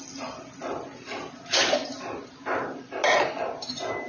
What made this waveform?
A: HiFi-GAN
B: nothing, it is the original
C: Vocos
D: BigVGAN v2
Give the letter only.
B